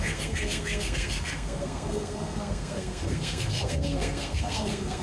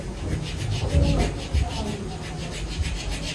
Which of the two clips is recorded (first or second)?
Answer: second